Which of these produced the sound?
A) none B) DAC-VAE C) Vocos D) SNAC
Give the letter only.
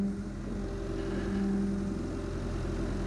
A